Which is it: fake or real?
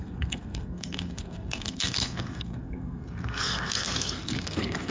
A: fake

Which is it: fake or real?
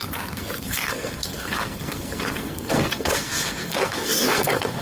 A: fake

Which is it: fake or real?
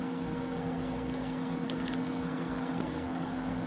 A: fake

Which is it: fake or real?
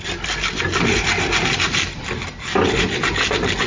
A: real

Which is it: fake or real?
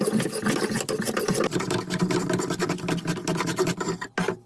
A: real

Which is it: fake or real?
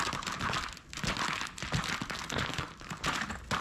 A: real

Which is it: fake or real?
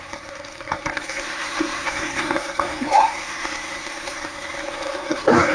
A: fake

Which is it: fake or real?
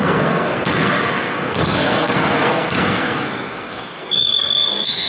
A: fake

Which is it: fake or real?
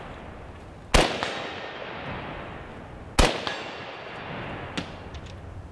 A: real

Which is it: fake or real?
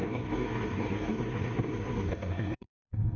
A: fake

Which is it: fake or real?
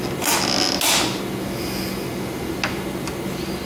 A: real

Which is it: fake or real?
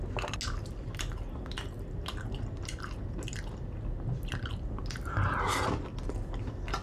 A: real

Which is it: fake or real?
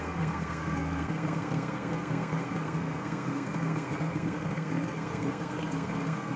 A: fake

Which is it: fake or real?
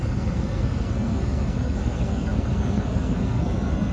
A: fake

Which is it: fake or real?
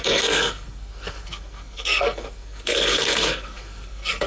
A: fake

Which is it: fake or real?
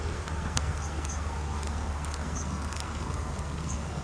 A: fake